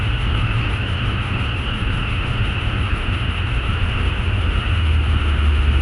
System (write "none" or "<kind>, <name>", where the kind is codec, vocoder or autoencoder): autoencoder, DAC-VAE